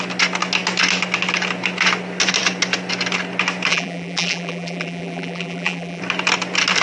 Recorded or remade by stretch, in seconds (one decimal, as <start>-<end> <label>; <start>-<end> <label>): 0.0-3.7 recorded; 3.7-6.0 remade; 6.0-6.8 recorded